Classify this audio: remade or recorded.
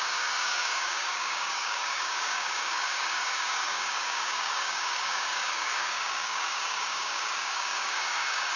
remade